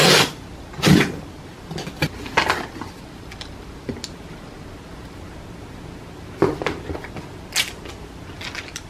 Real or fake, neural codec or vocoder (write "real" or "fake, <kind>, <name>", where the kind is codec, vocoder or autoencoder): real